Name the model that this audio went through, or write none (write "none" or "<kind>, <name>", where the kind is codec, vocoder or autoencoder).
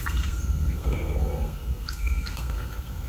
codec, SNAC